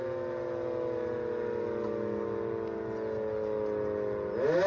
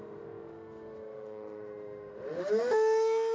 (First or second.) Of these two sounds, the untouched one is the first